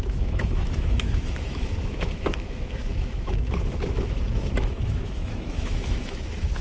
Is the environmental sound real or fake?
fake